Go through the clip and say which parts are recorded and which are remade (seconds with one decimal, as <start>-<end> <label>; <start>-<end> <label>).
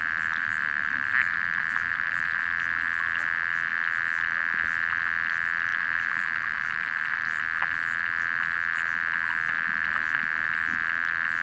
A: 0.0-0.4 recorded; 0.4-2.4 remade; 2.4-5.7 recorded; 5.7-7.4 remade; 7.4-11.4 recorded